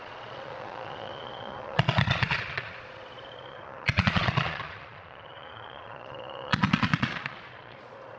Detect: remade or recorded remade